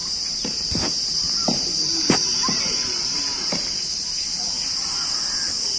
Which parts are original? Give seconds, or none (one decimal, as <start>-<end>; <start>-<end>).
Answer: none